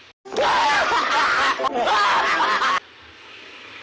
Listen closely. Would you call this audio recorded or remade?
recorded